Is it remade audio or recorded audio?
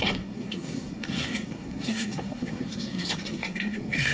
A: remade